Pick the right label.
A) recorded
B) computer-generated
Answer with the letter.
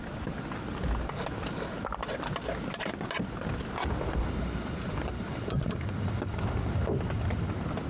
A